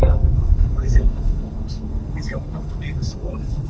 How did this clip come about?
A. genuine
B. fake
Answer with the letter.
B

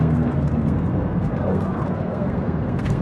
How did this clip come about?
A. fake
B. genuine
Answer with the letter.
A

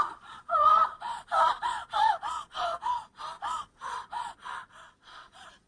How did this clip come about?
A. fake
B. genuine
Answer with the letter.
A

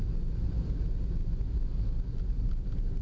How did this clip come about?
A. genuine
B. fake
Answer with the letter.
A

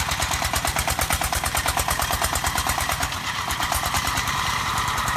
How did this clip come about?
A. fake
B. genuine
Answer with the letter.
A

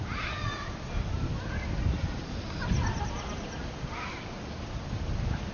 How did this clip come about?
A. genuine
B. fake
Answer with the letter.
A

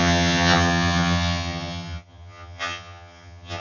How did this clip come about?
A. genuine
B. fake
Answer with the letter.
B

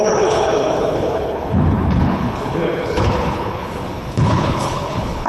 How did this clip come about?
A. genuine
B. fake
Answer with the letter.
B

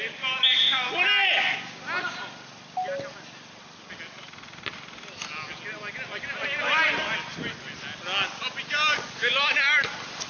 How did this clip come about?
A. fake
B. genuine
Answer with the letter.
B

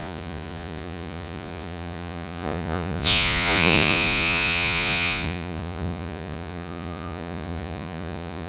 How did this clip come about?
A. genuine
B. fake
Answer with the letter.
B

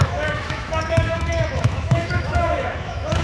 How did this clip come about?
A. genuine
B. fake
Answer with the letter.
B